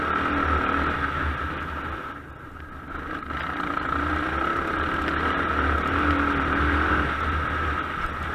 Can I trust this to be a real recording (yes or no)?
yes